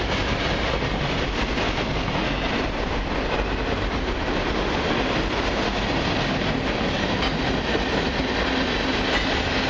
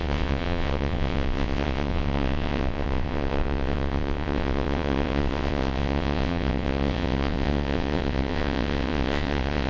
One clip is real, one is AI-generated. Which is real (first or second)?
first